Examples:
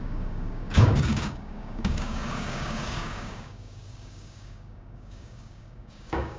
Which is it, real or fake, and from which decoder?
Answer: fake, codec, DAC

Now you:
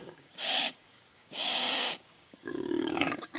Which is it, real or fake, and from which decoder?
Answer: fake, codec, DAC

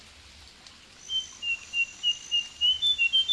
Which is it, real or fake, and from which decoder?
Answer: real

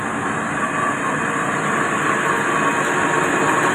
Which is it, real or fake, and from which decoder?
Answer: real